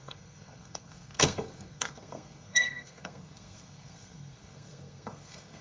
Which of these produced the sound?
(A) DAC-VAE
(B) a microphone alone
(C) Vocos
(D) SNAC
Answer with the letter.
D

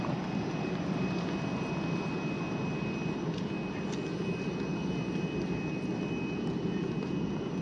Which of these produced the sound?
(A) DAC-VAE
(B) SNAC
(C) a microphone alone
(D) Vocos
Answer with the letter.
C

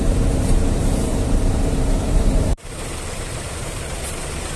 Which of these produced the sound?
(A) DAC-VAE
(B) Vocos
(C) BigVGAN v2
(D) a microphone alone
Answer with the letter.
C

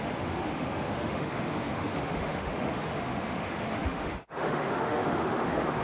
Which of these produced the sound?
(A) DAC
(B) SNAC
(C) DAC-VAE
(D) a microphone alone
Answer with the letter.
C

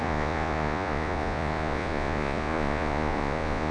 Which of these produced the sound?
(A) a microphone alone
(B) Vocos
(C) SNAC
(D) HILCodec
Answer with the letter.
B